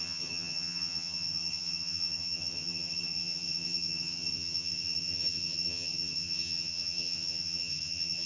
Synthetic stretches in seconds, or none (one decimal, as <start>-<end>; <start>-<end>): 0.0-8.3